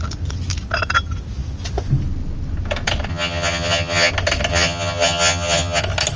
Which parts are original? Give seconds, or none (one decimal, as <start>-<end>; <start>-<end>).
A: 0.0-3.1; 4.1-4.5; 5.8-6.2